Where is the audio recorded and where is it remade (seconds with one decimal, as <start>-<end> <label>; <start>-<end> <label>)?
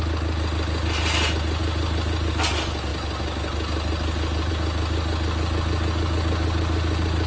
0.0-7.3 recorded